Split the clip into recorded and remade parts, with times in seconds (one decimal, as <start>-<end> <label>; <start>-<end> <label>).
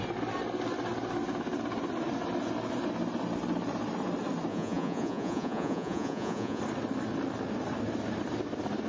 0.0-4.5 recorded; 4.5-6.6 remade; 6.6-8.9 recorded